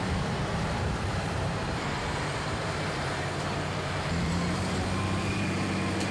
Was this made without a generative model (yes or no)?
no